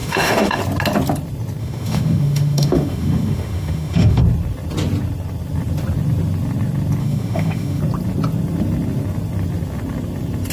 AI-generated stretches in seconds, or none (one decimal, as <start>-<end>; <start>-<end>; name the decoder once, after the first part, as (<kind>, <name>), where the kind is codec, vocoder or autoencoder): 0.0-0.6 (autoencoder, DAC-VAE); 1.6-4.2; 7.0-7.8

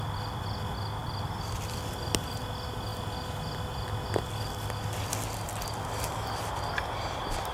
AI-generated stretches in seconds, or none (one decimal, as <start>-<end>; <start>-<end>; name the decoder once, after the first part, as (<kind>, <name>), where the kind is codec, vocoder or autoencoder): none

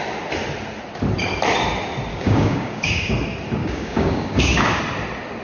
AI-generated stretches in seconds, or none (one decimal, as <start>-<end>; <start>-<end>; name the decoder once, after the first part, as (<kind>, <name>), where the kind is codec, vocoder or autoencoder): 2.1-3.1 (codec, DAC); 3.6-4.8

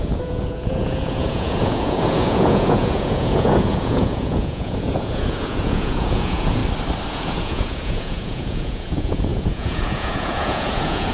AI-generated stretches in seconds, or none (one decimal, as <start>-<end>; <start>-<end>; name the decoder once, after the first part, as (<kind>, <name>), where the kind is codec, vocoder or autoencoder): 0.0-6.6 (vocoder, Vocos); 7.1-11.1

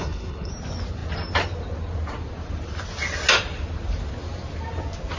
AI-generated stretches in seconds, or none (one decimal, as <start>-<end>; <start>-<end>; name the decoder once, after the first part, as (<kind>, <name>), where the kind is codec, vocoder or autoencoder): 0.0-0.5 (codec, HILCodec)